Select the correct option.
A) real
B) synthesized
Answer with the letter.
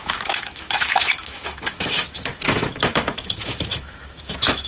B